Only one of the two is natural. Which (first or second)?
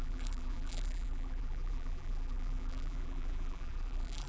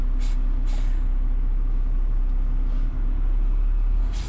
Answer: second